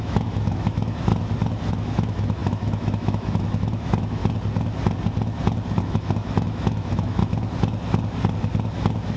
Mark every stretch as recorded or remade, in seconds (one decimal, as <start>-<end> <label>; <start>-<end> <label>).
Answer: 0.0-1.1 remade; 1.1-1.7 recorded; 1.7-4.2 remade; 4.2-5.8 recorded; 5.8-7.2 remade; 7.2-9.2 recorded